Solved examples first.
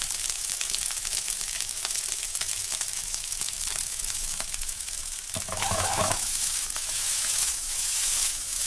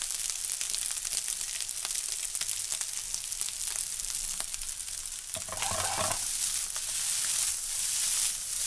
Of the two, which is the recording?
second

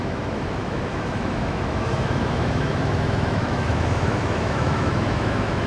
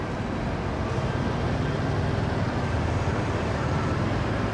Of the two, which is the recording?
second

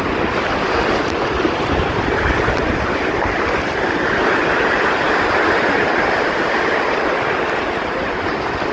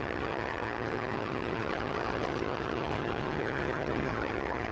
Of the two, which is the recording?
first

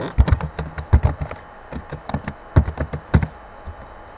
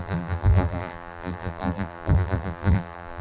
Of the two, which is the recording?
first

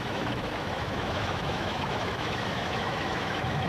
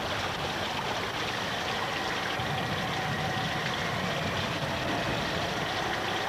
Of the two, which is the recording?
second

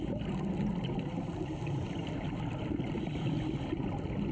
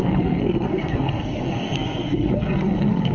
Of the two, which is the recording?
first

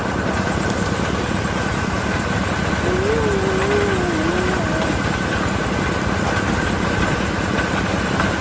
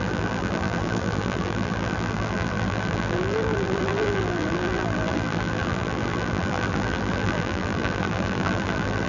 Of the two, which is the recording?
first